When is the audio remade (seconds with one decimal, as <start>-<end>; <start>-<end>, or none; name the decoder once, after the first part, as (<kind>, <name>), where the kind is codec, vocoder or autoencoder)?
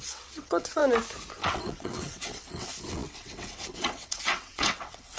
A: 0.0-0.8 (vocoder, WaveNeXt); 1.3-5.2